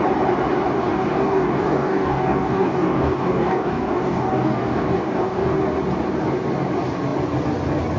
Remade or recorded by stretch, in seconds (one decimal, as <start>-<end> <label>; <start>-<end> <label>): 0.0-0.8 recorded; 0.8-5.6 remade; 5.6-8.0 recorded